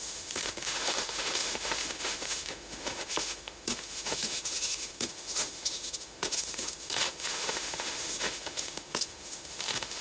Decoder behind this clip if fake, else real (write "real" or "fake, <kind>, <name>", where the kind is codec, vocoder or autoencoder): fake, autoencoder, DAC-VAE